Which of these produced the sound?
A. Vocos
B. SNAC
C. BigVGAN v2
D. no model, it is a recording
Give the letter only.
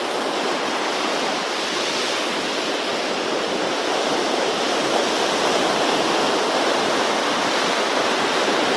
D